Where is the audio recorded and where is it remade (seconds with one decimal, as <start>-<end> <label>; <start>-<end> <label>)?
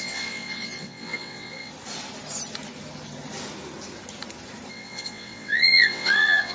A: 0.0-1.7 remade; 1.7-4.7 recorded; 4.7-6.5 remade